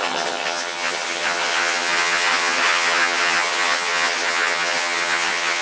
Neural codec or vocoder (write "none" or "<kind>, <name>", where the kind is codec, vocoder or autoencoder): vocoder, HiFi-GAN